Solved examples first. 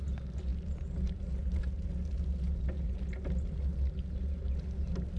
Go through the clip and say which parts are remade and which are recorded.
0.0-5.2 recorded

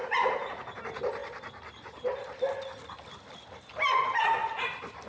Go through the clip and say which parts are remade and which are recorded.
0.0-0.7 remade; 0.7-5.1 recorded

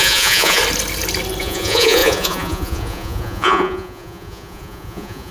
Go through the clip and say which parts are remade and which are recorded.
0.0-0.6 remade; 0.6-1.4 recorded; 1.4-5.3 remade

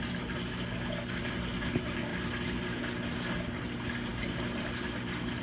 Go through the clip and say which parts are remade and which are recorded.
0.0-5.4 recorded

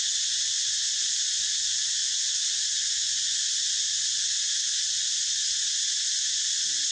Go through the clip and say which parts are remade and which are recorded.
0.0-5.2 recorded; 5.2-6.3 remade; 6.3-6.9 recorded

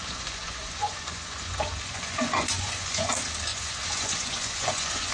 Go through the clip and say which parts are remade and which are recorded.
0.0-3.1 remade; 3.1-3.5 recorded; 3.5-5.1 remade

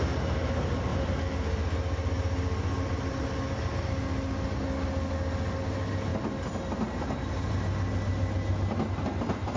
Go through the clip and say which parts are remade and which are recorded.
0.0-9.6 recorded